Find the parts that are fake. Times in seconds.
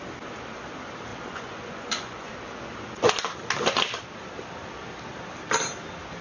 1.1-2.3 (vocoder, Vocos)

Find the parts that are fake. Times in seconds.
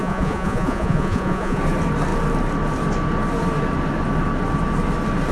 0.0-1.6 (vocoder, Vocos)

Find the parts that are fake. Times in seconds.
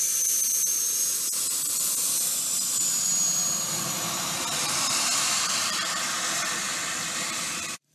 0.0-3.1 (vocoder, BigVGAN v2); 5.3-6.7; 7.3-7.9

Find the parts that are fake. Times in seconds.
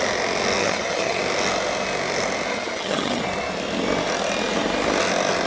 0.6-1.2 (vocoder, HiFi-GAN); 2.5-3.2